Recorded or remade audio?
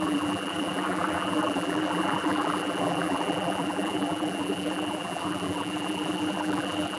remade